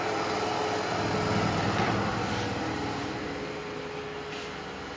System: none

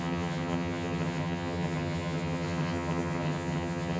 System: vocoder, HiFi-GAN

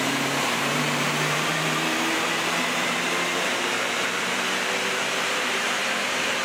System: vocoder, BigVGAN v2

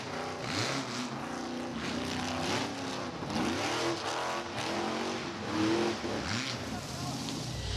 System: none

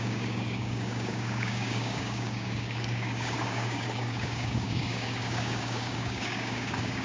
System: codec, DAC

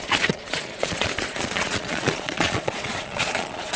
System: vocoder, Vocos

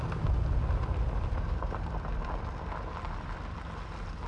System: none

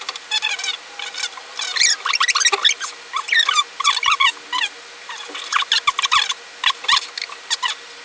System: none